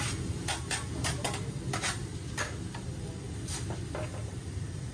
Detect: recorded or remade recorded